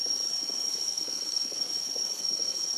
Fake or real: fake